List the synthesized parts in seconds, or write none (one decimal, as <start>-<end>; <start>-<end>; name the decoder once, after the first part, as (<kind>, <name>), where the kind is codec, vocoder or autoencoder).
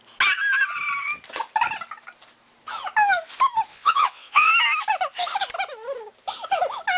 3.7-4.5 (vocoder, WaveNeXt)